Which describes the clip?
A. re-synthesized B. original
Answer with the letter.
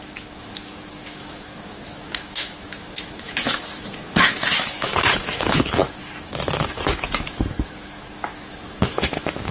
A